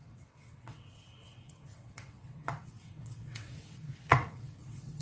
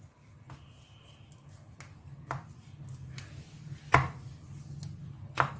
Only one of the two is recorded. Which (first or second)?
second